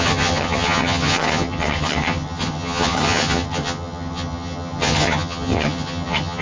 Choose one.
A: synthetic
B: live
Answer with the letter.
A